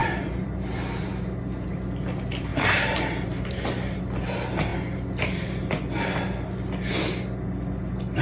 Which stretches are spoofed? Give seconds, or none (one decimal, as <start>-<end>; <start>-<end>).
0.0-0.7; 2.5-4.0